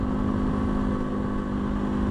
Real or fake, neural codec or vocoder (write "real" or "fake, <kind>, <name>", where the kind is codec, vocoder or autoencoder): real